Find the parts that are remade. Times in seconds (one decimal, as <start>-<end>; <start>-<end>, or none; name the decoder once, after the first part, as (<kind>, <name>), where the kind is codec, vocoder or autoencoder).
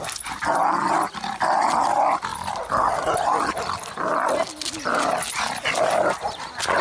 none